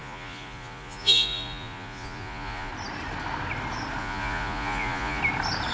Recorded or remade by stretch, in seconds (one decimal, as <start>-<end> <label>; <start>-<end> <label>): 0.0-2.7 remade; 2.7-4.0 recorded; 4.0-5.2 remade; 5.2-5.7 recorded